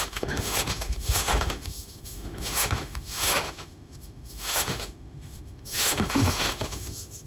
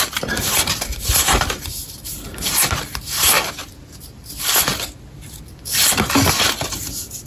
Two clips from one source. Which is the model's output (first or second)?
first